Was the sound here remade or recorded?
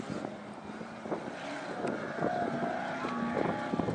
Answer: recorded